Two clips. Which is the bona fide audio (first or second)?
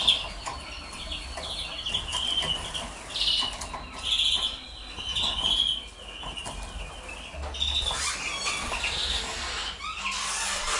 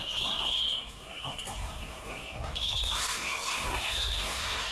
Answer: first